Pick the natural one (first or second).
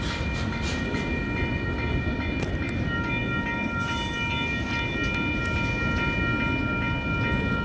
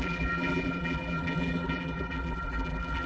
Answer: first